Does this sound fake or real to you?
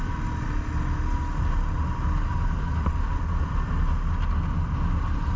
real